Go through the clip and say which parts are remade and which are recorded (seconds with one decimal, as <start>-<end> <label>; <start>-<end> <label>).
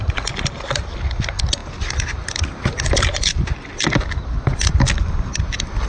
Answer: 0.0-5.9 recorded